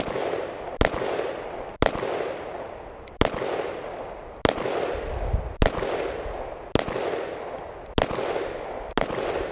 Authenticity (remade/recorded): recorded